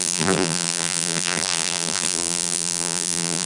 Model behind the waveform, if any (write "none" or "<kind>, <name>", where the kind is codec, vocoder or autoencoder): vocoder, BigVGAN v2